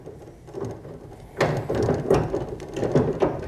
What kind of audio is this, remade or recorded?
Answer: recorded